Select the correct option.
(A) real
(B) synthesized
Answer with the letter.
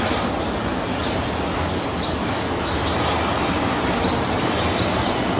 A